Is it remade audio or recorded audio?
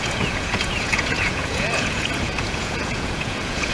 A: remade